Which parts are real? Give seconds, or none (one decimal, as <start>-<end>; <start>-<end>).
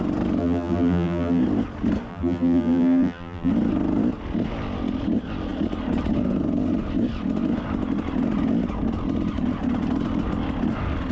0.0-0.4; 1.4-2.1; 3.5-11.1